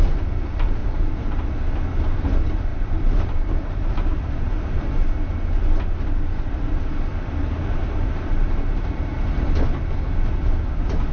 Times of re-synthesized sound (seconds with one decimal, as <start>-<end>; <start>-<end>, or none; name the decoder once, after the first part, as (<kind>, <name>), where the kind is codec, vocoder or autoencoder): 0.8-1.5 (vocoder, BigVGAN v2); 2.7-4.5; 7.1-9.4